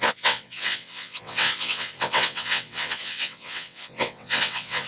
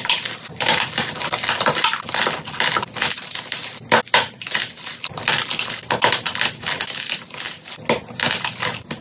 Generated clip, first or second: first